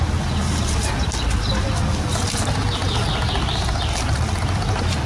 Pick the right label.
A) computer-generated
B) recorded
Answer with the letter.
B